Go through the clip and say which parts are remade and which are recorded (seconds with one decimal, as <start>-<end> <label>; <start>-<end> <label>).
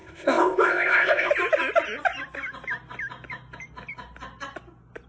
0.0-1.3 remade; 1.3-5.1 recorded